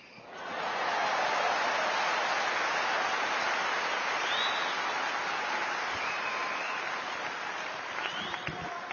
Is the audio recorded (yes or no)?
yes